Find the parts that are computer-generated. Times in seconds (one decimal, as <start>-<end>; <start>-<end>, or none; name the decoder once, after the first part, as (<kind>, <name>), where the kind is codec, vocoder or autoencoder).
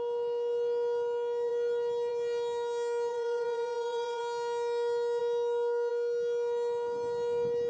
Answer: 3.1-4.2 (vocoder, Vocos)